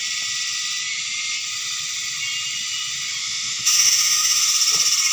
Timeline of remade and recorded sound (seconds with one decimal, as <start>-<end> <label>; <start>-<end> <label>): 0.0-3.2 recorded; 3.2-4.4 remade; 4.4-5.1 recorded

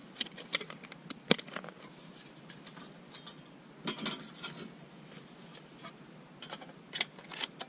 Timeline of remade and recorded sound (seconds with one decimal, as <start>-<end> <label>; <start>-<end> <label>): 0.0-7.7 recorded

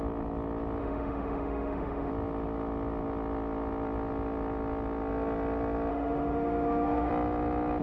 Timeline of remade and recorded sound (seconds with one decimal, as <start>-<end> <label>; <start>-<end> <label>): 0.0-0.8 recorded; 0.8-2.1 remade; 2.1-5.9 recorded; 5.9-7.1 remade; 7.1-7.8 recorded

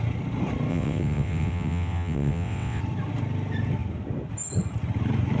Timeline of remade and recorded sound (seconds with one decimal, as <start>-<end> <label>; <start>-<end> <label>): 0.0-0.7 recorded; 0.7-2.8 remade; 2.8-5.4 recorded

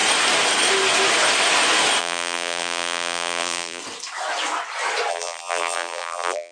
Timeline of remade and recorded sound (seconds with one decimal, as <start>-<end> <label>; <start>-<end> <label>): 0.0-2.0 recorded; 2.0-3.8 remade; 3.8-5.1 recorded; 5.1-6.5 remade